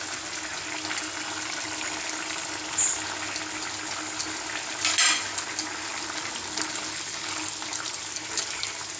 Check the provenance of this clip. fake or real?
real